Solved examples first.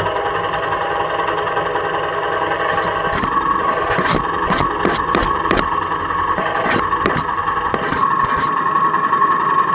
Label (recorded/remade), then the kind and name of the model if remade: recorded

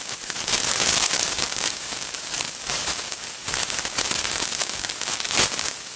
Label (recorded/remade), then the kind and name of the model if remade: remade, codec, DAC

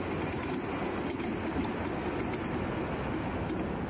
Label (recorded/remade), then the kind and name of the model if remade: recorded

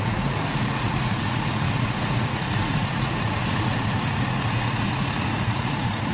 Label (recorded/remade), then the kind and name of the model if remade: remade, vocoder, Vocos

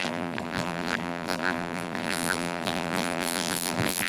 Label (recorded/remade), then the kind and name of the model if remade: remade, vocoder, BigVGAN v2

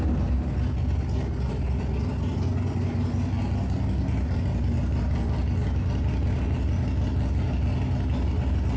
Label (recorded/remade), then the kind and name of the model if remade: recorded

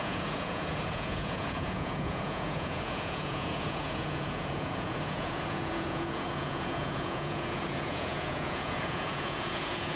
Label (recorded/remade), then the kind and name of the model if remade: remade, vocoder, Vocos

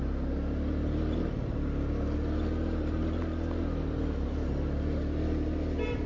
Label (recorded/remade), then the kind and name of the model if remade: recorded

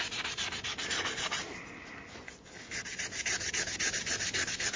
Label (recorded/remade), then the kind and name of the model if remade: recorded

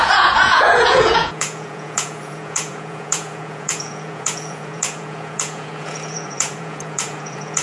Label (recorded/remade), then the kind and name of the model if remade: remade, vocoder, Vocos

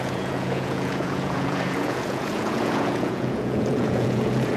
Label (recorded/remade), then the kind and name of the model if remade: remade, vocoder, Vocos